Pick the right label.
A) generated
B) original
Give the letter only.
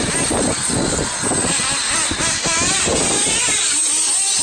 B